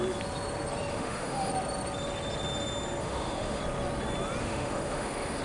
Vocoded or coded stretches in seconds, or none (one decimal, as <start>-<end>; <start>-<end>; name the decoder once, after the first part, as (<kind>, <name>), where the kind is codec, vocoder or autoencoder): 0.9-1.5 (autoencoder, DAC-VAE); 3.0-3.6; 4.4-5.4